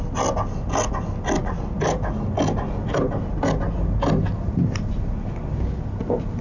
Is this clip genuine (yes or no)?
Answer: yes